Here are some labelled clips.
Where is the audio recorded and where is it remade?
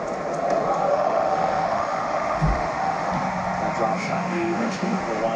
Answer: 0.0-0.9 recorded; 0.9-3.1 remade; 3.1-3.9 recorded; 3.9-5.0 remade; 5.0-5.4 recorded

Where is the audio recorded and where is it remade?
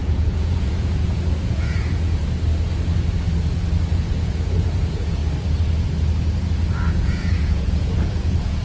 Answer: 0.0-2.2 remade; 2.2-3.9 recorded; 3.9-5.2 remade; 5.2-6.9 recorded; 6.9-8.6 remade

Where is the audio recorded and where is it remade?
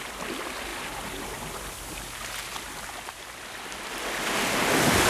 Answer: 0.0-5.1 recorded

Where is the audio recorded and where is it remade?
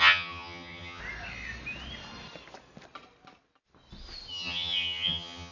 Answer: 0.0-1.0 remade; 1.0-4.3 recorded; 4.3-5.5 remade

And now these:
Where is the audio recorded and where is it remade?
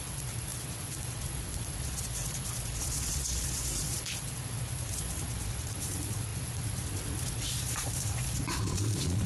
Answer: 0.0-9.3 remade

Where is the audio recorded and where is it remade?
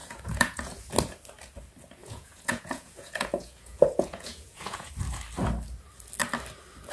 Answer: 0.0-0.8 remade; 0.8-2.0 recorded; 2.0-4.9 remade; 4.9-6.9 recorded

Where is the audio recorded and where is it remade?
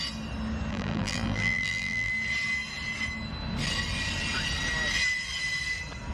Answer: 0.0-0.7 recorded; 0.7-2.1 remade; 2.1-6.1 recorded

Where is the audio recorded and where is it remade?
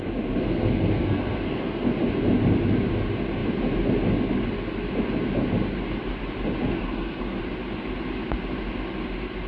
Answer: 0.0-0.4 recorded; 0.4-2.0 remade; 2.0-6.7 recorded; 6.7-7.4 remade; 7.4-9.5 recorded